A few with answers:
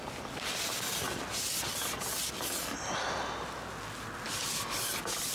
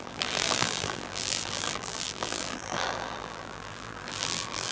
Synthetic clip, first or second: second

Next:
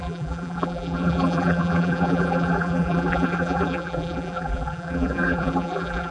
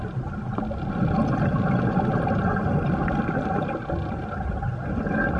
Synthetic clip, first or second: first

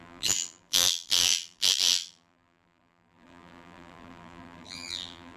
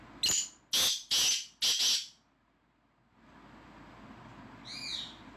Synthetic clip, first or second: first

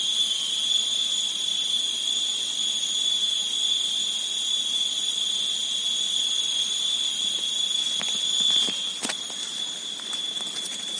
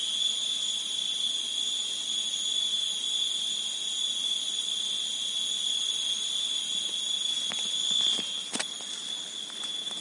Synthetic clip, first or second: first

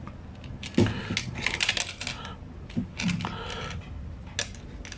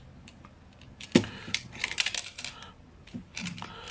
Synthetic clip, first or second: second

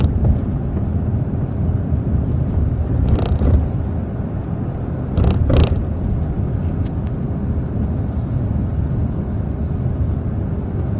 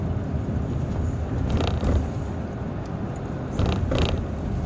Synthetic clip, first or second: first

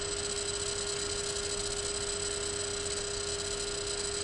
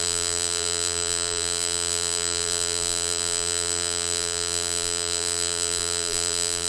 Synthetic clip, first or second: second